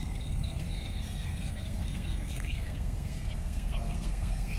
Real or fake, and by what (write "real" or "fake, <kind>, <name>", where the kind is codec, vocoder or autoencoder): fake, codec, SNAC